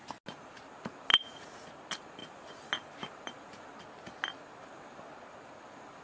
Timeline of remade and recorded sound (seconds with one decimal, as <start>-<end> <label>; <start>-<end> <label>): 0.0-1.1 recorded; 1.1-1.7 remade; 1.7-6.0 recorded